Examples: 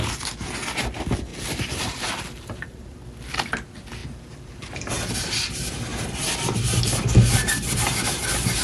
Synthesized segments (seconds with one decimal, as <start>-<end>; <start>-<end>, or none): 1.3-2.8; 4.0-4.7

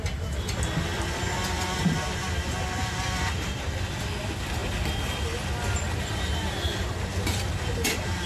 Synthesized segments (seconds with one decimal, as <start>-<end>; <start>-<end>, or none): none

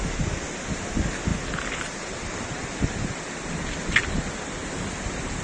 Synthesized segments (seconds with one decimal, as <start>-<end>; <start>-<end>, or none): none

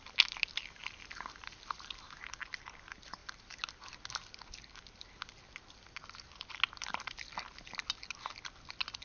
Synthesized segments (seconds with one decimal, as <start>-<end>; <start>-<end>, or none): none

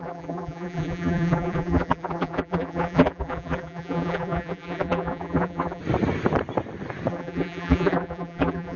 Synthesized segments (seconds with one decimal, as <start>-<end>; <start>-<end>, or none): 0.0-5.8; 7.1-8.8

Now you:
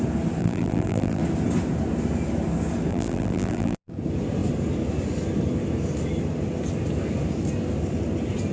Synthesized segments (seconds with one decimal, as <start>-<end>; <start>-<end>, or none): 0.4-1.2; 2.9-3.9